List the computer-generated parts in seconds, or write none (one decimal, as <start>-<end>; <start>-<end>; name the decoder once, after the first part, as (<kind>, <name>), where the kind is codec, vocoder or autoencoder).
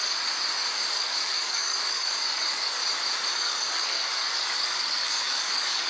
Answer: 0.9-2.8 (codec, DAC); 3.3-5.9